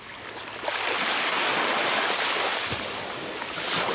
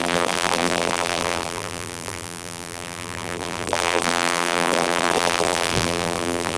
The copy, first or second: second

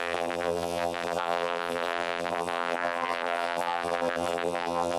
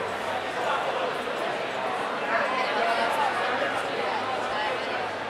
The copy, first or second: first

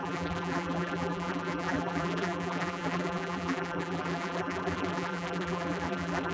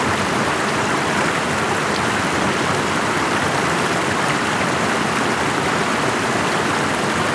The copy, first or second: first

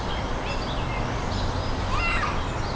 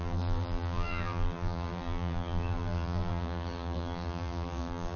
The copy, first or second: second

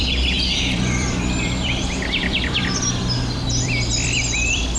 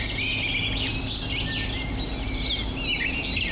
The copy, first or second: first